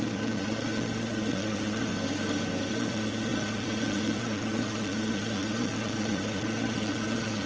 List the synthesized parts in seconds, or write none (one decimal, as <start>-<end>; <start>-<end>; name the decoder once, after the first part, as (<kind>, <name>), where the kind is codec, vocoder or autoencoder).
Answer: 0.0-1.9 (vocoder, Vocos); 2.7-7.5